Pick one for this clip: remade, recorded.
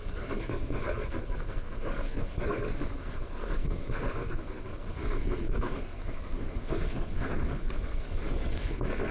remade